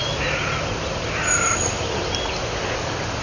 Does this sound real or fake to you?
real